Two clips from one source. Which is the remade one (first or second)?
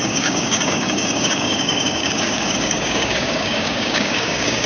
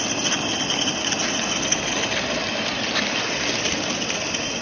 first